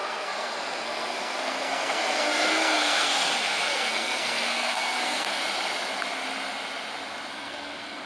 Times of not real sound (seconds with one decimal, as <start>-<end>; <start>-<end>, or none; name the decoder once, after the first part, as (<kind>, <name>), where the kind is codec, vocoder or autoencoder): 0.0-5.4 (codec, SNAC); 7.3-8.1